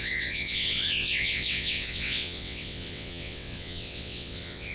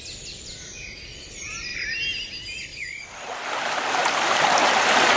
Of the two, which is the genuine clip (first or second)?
second